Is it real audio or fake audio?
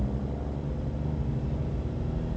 real